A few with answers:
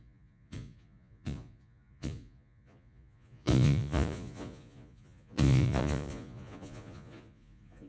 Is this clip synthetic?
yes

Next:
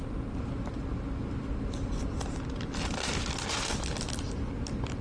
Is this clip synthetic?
no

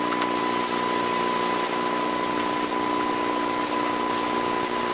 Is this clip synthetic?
no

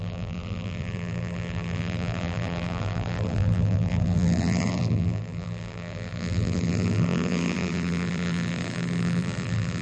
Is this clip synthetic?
yes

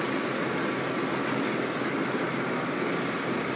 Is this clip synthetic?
no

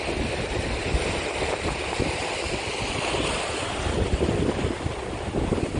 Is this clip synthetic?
no